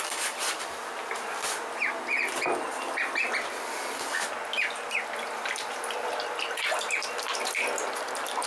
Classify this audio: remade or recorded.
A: recorded